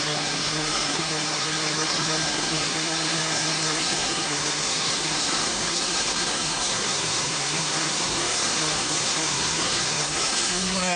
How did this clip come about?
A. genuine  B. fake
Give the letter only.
B